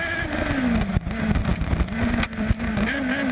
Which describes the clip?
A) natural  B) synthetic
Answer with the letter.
A